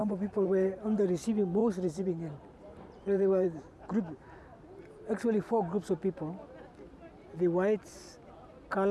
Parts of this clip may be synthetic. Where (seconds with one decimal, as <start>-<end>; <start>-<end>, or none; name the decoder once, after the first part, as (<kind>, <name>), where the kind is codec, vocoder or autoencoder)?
0.0-0.8 (vocoder, BigVGAN v2); 1.6-3.7